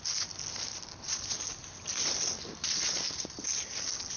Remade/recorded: recorded